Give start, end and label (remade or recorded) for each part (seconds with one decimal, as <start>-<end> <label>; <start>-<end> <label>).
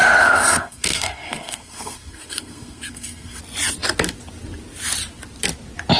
0.0-3.4 remade; 3.4-6.0 recorded